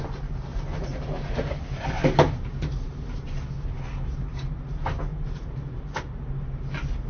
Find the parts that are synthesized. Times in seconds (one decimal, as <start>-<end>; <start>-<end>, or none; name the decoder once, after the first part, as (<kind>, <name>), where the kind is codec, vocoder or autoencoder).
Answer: 0.5-4.6 (vocoder, BigVGAN v2); 5.1-6.0